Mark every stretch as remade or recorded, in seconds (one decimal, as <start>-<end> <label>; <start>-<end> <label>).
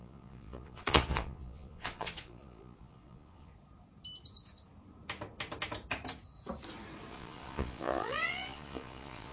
0.0-3.5 remade; 3.5-7.1 recorded; 7.1-9.3 remade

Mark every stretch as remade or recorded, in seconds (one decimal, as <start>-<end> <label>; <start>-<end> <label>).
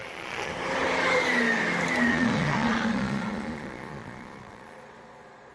0.0-0.5 remade; 0.5-2.1 recorded; 2.1-5.5 remade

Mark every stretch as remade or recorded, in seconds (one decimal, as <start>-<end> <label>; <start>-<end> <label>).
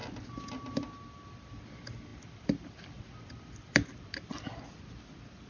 0.0-5.5 recorded